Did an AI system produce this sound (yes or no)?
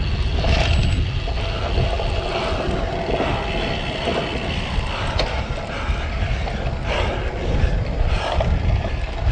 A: no